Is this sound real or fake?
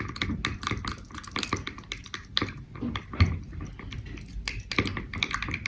fake